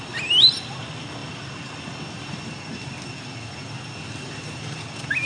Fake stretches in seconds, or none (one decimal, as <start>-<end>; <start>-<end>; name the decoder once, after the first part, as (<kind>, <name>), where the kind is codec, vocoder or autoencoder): none